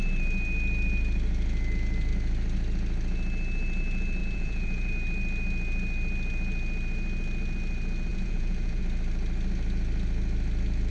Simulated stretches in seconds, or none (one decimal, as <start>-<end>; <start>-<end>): 4.2-4.9; 8.1-8.8